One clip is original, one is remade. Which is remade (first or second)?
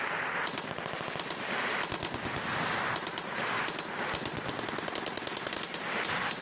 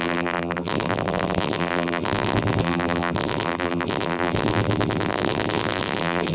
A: second